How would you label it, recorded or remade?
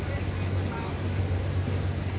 recorded